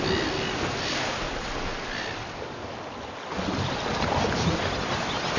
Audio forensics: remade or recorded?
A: recorded